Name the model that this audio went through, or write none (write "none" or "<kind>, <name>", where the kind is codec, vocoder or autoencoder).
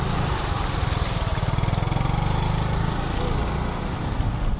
none